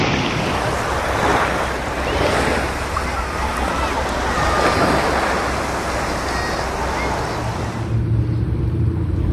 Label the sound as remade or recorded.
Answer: recorded